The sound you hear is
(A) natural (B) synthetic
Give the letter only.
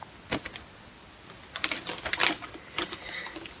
A